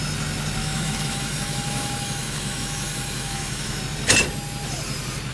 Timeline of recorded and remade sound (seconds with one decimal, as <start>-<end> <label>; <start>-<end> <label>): 0.0-0.6 recorded; 0.6-3.8 remade; 3.8-5.3 recorded